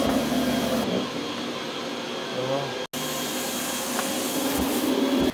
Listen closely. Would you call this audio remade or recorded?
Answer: recorded